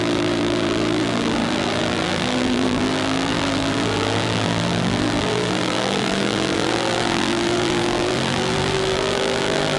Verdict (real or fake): fake